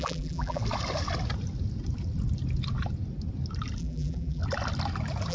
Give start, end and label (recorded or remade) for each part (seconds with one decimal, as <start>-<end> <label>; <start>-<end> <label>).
0.0-0.6 remade; 0.6-3.8 recorded; 3.8-4.4 remade; 4.4-5.3 recorded